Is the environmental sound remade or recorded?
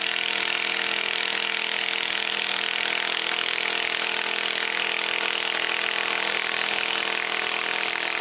recorded